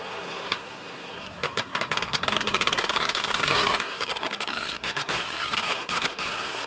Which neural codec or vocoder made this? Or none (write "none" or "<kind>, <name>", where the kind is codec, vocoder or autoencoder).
codec, SNAC